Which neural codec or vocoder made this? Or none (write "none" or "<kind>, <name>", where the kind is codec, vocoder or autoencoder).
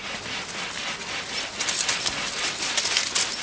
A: none